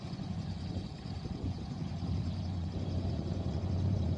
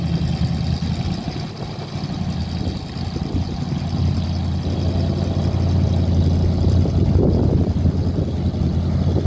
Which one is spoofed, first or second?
first